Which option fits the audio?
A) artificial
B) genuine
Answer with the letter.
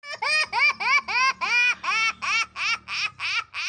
B